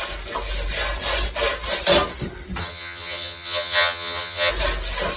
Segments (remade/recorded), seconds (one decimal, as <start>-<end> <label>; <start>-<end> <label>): 0.0-2.6 recorded; 2.6-4.5 remade; 4.5-5.2 recorded